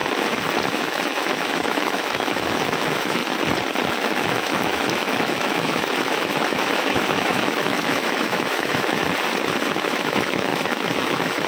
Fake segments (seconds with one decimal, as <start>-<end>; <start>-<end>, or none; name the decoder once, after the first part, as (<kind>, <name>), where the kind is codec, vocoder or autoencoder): 0.7-3.2 (autoencoder, DAC-VAE); 3.9-9.0; 9.7-11.5